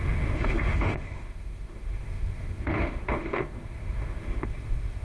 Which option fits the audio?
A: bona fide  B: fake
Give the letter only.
B